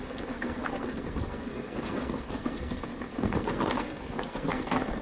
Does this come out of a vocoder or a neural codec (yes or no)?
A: yes